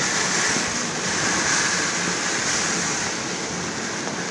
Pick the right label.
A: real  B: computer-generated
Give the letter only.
A